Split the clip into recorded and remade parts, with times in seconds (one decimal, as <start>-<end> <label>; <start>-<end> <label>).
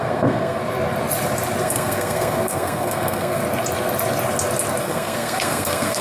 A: 0.0-0.6 remade; 0.6-1.6 recorded; 1.6-3.4 remade; 3.4-4.8 recorded; 4.8-6.0 remade